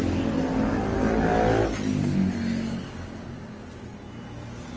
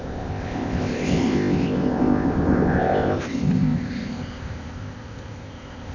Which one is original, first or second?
first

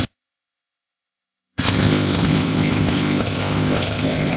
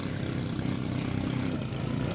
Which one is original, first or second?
second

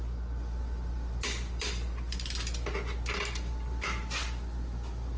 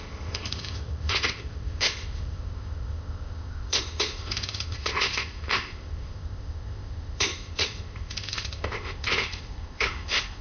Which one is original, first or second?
first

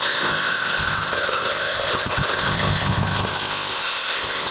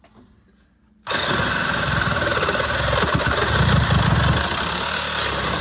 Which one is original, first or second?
second